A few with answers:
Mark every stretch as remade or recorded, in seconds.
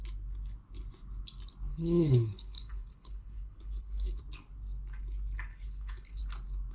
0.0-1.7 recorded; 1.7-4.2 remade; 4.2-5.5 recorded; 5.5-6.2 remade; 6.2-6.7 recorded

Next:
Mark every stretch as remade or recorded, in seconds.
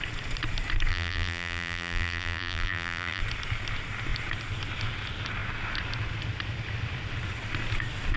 0.0-0.9 recorded; 0.9-3.2 remade; 3.2-8.2 recorded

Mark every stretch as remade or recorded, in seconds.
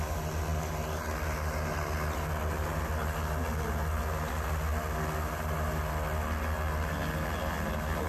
0.0-8.1 recorded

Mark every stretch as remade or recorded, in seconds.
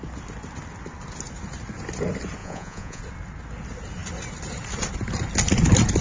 0.0-2.4 recorded; 2.4-3.0 remade; 3.0-6.0 recorded